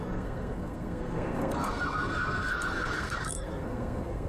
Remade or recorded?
remade